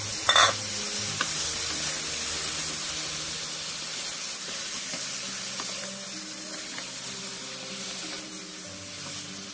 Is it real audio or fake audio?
real